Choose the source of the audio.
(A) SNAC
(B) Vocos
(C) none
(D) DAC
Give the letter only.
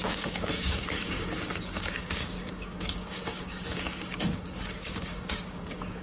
D